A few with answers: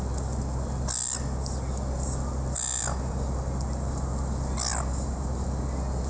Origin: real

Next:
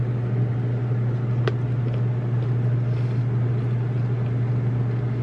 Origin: real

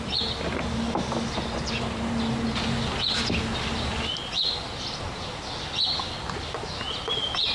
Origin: real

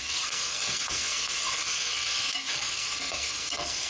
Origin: fake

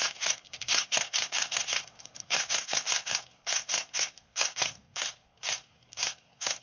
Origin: fake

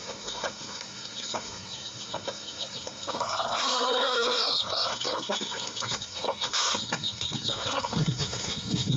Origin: fake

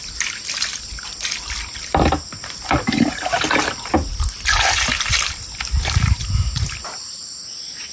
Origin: real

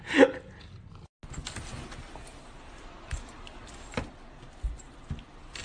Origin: real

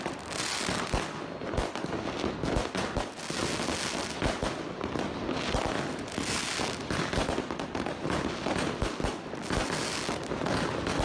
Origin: real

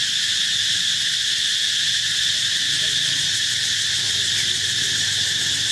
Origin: real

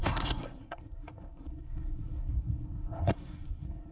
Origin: fake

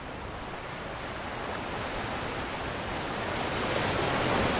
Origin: real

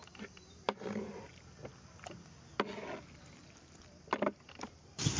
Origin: real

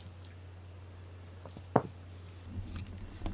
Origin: real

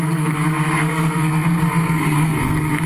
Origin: fake